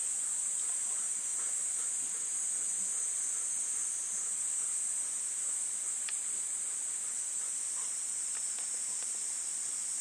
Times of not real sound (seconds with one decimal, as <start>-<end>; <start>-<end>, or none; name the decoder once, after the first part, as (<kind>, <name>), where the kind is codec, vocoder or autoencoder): none